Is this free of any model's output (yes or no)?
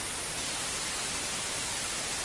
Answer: yes